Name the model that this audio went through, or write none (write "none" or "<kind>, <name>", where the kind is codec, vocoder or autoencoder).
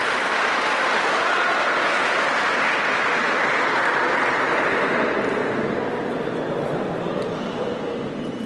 none